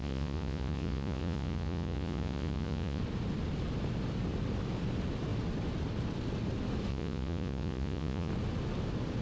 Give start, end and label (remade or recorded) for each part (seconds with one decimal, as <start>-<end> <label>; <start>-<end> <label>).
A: 0.0-3.0 remade; 3.0-6.9 recorded; 6.9-8.3 remade; 8.3-9.2 recorded